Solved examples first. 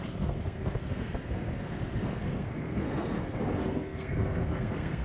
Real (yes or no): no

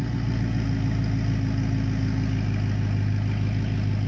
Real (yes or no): yes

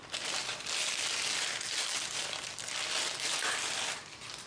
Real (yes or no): yes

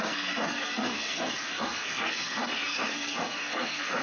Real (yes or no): no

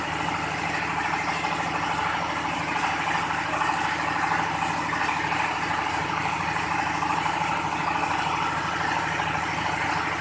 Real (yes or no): yes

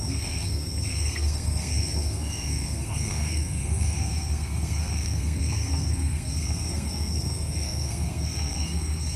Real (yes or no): no